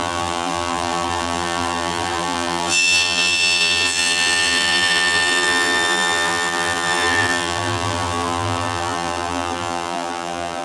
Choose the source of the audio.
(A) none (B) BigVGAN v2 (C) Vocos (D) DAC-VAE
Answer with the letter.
B